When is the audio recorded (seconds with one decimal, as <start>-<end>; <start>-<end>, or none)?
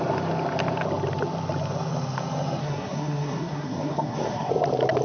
0.0-2.6; 4.5-5.0